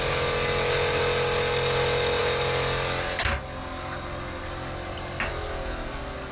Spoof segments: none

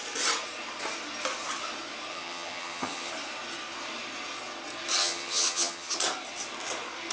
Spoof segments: 2.1-3.1; 5.0-5.9

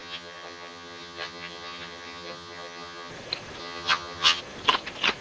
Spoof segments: 0.0-3.1; 3.6-4.4

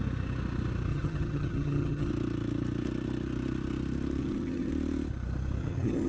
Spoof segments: 0.9-2.1; 4.2-4.7; 5.6-6.1